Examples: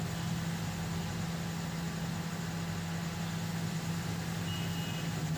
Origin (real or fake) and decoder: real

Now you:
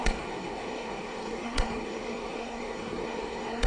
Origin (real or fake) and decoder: fake, codec, SNAC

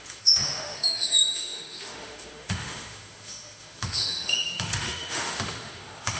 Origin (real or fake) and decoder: fake, autoencoder, DAC-VAE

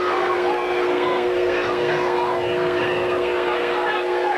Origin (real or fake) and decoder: fake, codec, SNAC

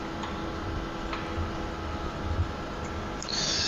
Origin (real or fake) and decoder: real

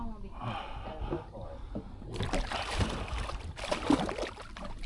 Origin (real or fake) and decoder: real